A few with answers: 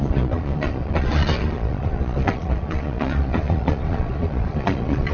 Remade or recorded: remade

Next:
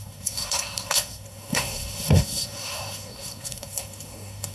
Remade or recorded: remade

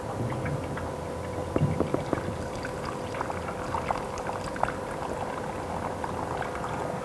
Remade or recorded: recorded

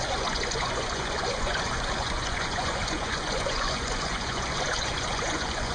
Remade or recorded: remade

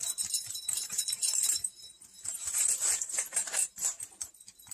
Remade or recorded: remade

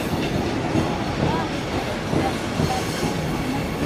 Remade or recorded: recorded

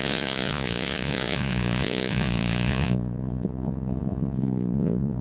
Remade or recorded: remade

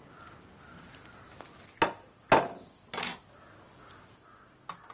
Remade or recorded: recorded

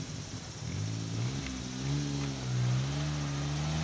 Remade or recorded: recorded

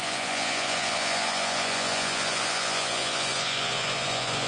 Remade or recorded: remade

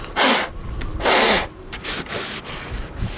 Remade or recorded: recorded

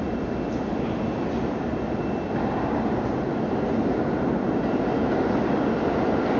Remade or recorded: recorded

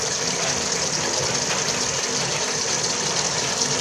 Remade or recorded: recorded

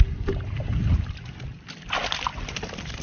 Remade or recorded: recorded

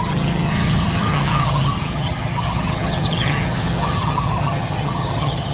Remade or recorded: remade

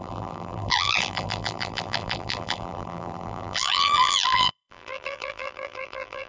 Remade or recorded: remade